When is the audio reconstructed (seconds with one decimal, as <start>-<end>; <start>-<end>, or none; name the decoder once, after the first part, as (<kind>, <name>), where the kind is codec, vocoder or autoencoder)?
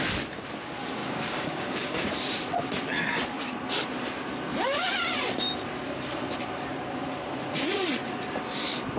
1.0-2.1 (codec, DAC)